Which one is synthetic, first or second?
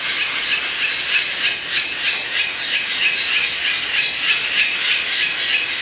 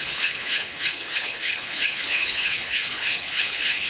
second